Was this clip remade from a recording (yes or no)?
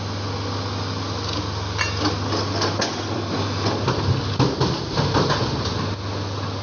no